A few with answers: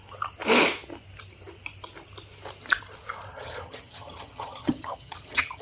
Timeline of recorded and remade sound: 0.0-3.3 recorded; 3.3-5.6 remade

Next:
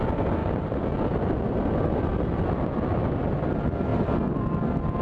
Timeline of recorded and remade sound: 0.0-5.0 recorded

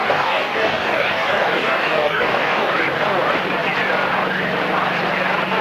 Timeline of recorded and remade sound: 0.0-2.7 remade; 2.7-5.6 recorded

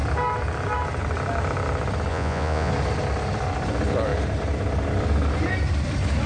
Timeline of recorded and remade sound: 0.0-2.1 recorded; 2.1-2.7 remade; 2.7-6.3 recorded

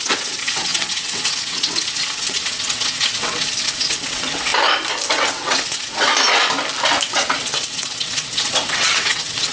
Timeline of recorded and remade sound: 0.0-4.5 remade; 4.5-5.1 recorded; 5.1-6.1 remade; 6.1-7.1 recorded; 7.1-9.5 remade